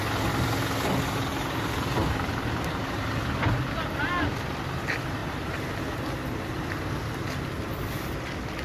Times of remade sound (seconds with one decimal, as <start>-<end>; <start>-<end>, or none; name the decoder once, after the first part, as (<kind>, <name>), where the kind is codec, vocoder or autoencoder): 1.3-3.1 (vocoder, BigVGAN v2); 5.2-6.0